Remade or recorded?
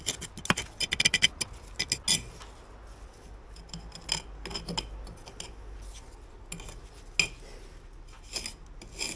recorded